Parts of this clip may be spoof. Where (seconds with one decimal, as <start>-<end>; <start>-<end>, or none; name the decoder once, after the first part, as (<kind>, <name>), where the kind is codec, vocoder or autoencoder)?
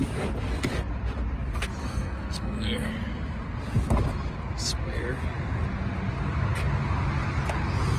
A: 1.8-2.9 (codec, SNAC)